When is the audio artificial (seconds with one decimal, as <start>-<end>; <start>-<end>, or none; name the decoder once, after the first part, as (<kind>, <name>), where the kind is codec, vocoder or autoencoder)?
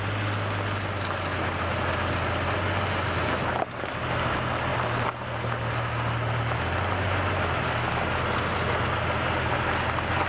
none